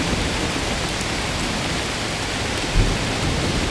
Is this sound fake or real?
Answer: real